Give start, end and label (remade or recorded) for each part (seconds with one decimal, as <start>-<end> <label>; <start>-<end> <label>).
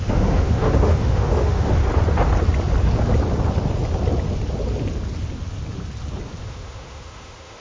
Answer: 0.0-1.8 remade; 1.8-6.4 recorded; 6.4-7.6 remade